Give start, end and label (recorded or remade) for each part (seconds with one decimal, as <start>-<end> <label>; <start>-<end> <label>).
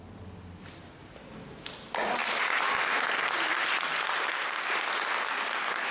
0.0-5.9 recorded